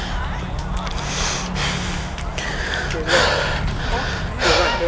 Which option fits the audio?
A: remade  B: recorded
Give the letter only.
B